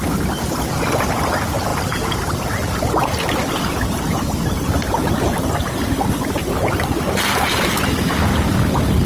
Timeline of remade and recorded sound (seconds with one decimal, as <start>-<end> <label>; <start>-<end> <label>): 0.0-9.1 recorded